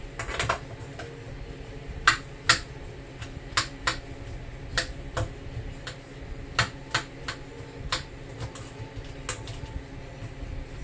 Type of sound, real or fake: real